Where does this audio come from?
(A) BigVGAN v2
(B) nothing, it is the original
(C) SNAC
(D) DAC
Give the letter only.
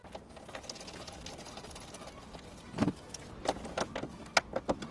B